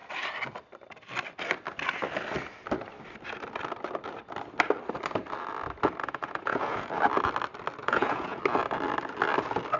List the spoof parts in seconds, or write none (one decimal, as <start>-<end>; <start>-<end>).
6.0-6.9; 7.8-8.4